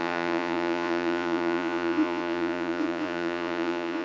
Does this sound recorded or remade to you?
remade